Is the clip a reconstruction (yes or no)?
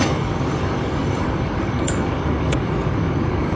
yes